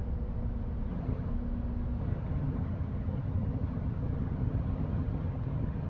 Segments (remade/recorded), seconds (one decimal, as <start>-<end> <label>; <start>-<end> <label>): 0.0-0.9 recorded; 0.9-1.3 remade; 1.3-2.0 recorded; 2.0-5.9 remade